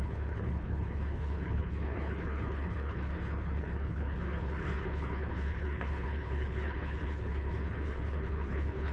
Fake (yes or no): yes